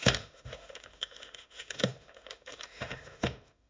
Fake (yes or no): yes